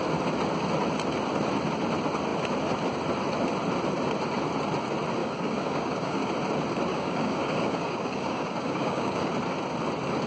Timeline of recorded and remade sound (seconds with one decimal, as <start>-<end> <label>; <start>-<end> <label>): 0.0-5.2 recorded; 5.2-6.3 remade; 6.3-6.9 recorded; 6.9-9.3 remade; 9.3-10.3 recorded